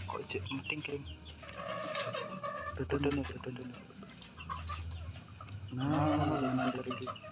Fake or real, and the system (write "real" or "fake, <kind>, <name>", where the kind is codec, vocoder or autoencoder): real